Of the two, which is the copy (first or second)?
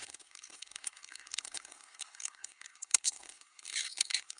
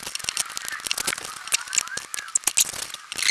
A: first